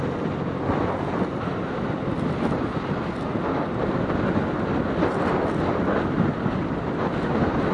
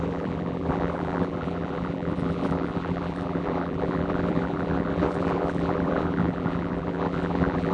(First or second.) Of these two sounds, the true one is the first